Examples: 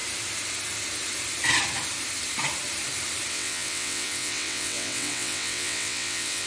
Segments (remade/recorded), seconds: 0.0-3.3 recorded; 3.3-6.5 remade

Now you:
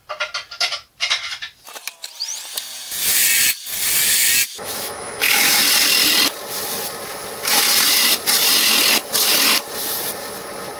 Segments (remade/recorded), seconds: 0.0-4.5 recorded; 4.5-5.6 remade; 5.6-10.8 recorded

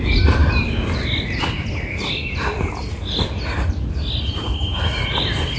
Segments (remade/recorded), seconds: 0.0-5.6 recorded